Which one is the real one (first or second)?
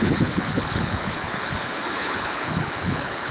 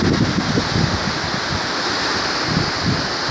second